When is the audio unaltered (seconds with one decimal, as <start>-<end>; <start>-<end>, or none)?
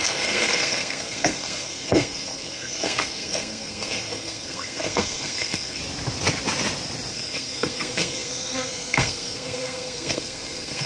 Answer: 5.8-7.1